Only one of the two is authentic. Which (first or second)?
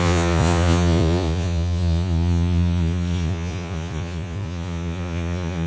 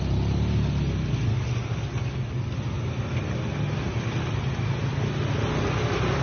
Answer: second